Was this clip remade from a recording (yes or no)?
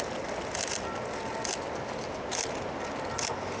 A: no